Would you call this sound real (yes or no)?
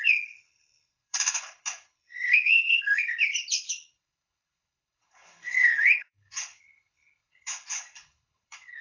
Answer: no